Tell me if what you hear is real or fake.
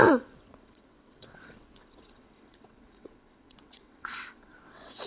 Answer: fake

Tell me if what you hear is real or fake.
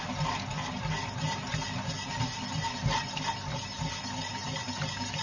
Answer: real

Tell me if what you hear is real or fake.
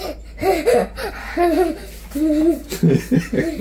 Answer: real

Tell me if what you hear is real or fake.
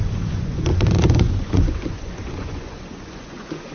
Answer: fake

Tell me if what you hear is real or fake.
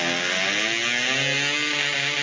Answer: real